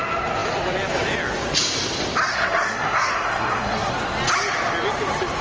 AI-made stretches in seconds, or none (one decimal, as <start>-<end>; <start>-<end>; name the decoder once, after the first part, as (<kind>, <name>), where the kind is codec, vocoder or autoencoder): 2.3-3.9 (codec, SNAC)